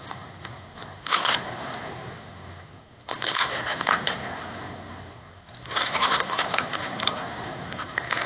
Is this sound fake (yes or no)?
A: yes